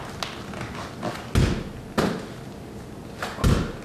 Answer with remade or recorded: recorded